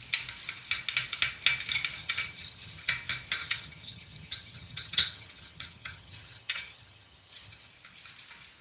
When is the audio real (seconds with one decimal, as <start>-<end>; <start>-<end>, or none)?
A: 0.0-2.0; 2.9-3.4; 7.7-8.6